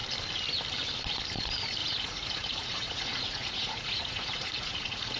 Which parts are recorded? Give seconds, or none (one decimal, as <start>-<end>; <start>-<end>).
0.0-1.8